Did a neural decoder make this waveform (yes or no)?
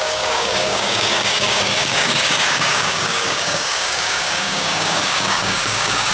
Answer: yes